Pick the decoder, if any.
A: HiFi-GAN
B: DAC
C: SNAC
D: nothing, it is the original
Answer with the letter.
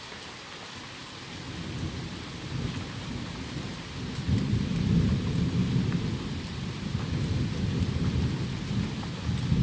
D